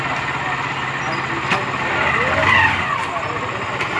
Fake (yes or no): no